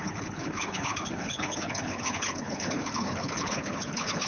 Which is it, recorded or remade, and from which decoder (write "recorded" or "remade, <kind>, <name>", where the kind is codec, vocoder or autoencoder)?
remade, codec, HILCodec